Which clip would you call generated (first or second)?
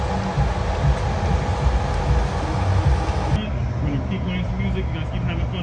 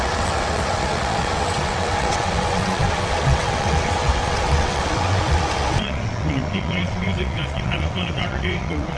second